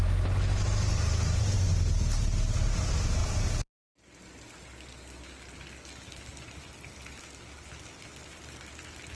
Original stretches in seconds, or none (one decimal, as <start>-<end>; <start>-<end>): 0.0-9.2